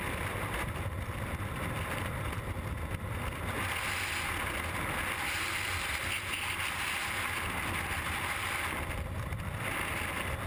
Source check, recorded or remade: recorded